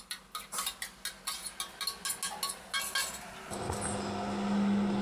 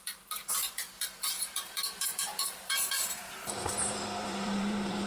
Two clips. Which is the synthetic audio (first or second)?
second